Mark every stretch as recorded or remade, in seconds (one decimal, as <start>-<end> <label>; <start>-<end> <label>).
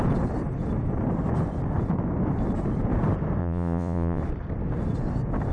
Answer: 0.0-3.4 recorded; 3.4-4.2 remade; 4.2-5.5 recorded